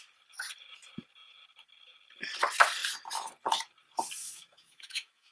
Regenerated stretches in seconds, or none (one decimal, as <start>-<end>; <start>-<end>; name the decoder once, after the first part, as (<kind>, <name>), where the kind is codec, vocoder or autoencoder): 4.2-5.3 (autoencoder, DAC-VAE)